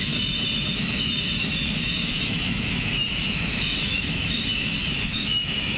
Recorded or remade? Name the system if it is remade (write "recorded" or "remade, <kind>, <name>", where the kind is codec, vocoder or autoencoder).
remade, autoencoder, DAC-VAE